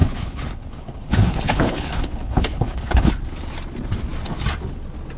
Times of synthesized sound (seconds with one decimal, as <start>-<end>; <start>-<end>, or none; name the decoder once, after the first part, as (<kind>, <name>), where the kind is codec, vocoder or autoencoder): 0.0-3.1 (codec, HILCodec)